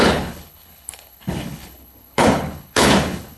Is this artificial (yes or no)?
yes